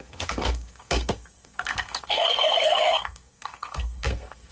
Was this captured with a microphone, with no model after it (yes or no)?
no